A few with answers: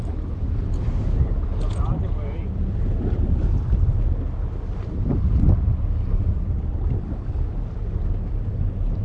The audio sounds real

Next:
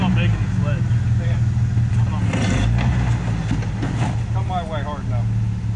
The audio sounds real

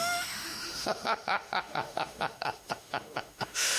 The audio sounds fake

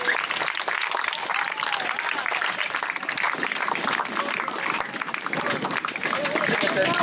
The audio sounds real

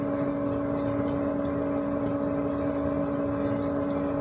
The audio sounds real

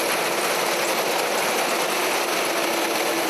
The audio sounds real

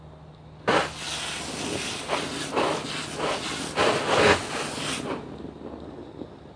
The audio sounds real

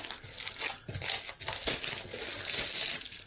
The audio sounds real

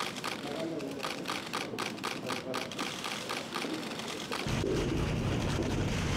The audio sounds real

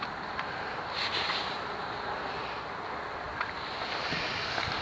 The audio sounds real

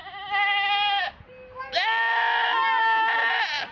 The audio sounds real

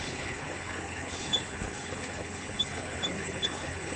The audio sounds fake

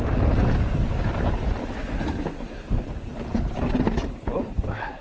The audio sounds real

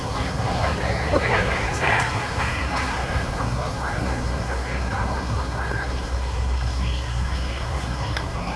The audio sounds fake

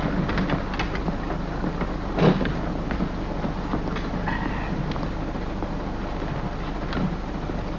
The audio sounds real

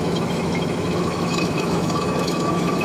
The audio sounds fake